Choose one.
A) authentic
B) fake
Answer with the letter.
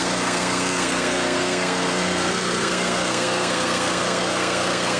B